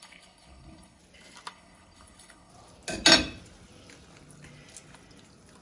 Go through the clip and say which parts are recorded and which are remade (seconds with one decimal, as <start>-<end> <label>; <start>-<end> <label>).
0.0-1.0 remade; 1.0-1.5 recorded; 1.5-2.5 remade; 2.5-5.6 recorded